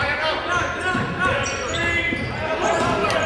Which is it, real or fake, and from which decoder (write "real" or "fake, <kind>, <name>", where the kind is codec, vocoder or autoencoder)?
real